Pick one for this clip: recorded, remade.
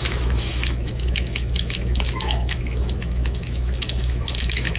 remade